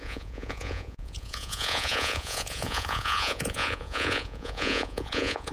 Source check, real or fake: fake